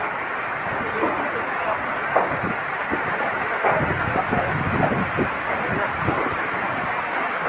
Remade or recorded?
recorded